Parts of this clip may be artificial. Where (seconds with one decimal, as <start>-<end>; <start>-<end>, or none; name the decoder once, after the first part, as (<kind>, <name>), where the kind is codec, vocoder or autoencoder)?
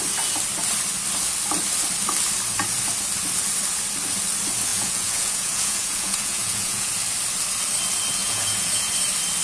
4.7-6.9 (vocoder, Vocos); 8.2-8.9